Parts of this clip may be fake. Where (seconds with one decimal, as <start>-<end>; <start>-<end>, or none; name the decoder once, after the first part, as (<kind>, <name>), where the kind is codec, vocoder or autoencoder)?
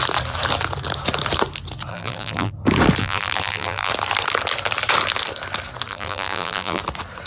1.9-2.5 (vocoder, BigVGAN v2); 3.0-3.9; 5.9-6.8